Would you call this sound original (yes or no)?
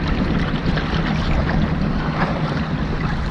yes